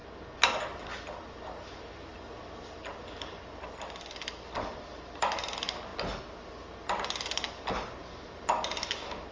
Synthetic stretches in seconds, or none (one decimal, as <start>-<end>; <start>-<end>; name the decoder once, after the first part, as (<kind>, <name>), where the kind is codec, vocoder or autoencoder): none